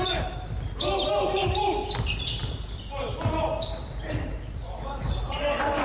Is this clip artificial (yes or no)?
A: no